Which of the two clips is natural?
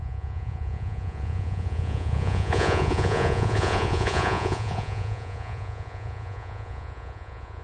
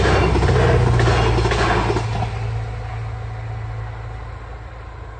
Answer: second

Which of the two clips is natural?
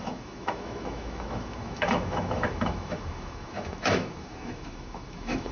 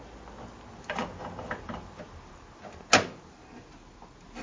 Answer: second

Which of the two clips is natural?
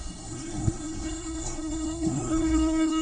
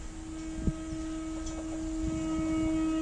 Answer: second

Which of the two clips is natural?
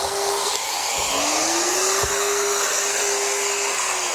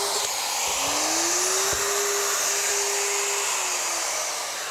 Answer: second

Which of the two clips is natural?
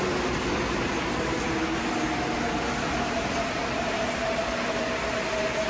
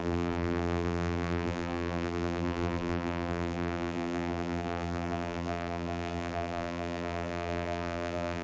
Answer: first